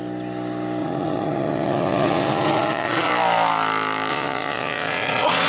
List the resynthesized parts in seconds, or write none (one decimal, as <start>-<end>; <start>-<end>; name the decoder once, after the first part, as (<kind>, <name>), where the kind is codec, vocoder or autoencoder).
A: 0.8-3.1 (vocoder, Vocos); 4.1-5.5